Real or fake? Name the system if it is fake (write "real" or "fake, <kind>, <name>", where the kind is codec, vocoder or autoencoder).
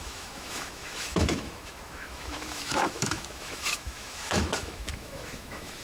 fake, autoencoder, DAC-VAE